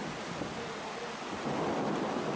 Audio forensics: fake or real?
real